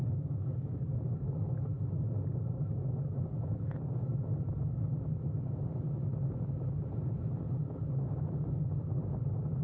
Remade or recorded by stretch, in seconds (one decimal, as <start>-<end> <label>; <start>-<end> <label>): 0.0-1.0 remade; 1.0-9.6 recorded